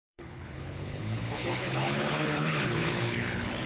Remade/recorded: remade